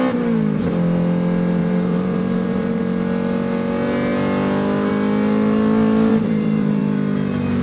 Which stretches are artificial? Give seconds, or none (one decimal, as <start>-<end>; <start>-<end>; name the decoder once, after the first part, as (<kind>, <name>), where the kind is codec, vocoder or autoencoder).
1.6-2.8 (vocoder, BigVGAN v2); 6.1-6.8